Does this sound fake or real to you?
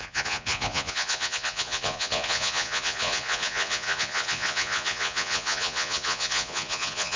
fake